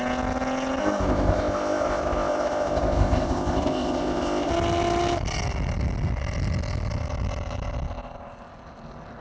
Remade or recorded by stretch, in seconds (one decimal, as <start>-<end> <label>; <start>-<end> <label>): 0.0-0.8 recorded; 0.8-4.5 remade; 4.5-9.2 recorded